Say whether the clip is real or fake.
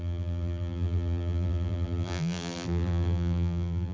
fake